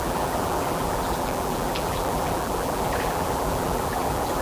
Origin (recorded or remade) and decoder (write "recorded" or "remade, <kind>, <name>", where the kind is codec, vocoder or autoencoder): remade, vocoder, BigVGAN v2